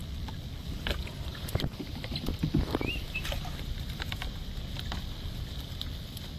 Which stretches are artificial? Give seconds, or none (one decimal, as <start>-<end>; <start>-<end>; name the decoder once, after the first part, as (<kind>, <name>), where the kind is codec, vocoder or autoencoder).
none